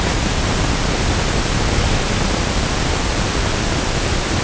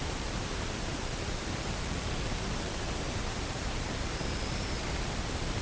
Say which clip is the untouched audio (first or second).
first